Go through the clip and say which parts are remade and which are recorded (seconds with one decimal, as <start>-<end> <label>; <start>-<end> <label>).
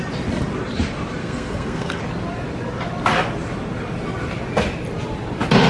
0.0-1.2 recorded; 1.2-2.0 remade; 2.0-5.7 recorded